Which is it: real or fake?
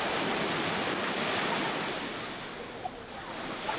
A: real